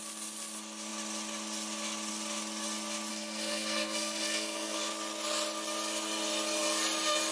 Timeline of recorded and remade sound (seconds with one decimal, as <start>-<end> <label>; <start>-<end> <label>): 0.0-3.1 recorded; 3.1-4.9 remade; 4.9-7.3 recorded

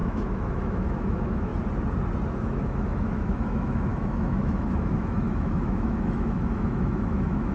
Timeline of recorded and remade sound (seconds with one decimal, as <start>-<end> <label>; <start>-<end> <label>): 0.0-1.5 remade; 1.5-2.3 recorded; 2.3-7.5 remade

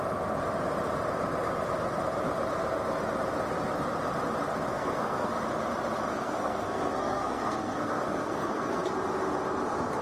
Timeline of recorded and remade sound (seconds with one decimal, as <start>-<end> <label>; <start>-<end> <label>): 0.0-4.7 recorded; 4.7-5.3 remade; 5.3-6.1 recorded; 6.1-8.9 remade; 8.9-10.0 recorded